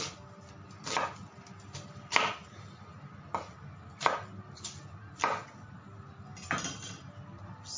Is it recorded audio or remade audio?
recorded